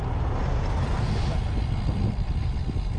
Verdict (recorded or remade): recorded